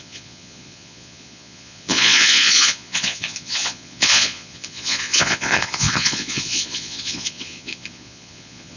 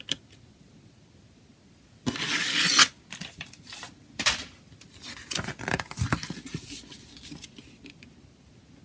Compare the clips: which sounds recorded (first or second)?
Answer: second